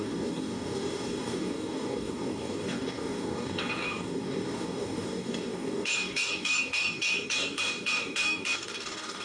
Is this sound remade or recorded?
remade